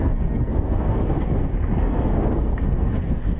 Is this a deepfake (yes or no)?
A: yes